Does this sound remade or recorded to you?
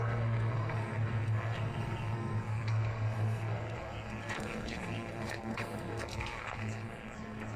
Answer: remade